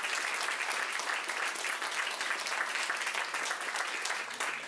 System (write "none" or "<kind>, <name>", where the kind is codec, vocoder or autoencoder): none